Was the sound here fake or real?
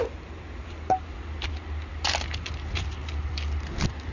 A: real